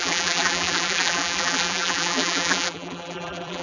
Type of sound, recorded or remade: remade